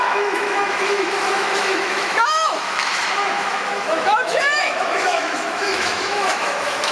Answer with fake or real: fake